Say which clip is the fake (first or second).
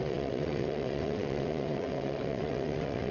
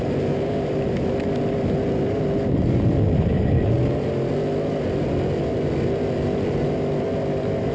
first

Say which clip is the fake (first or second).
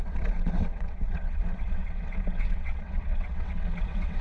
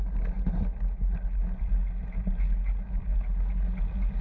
first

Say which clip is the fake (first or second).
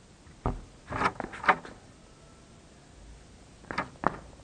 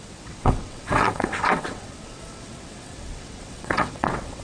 second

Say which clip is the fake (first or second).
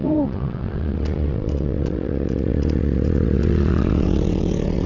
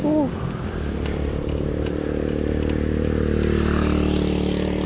first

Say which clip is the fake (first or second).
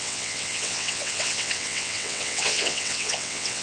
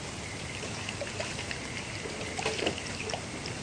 first